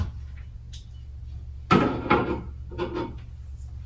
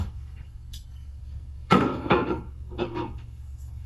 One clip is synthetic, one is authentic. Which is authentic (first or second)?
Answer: first